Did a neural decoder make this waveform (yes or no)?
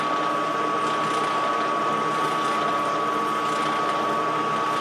no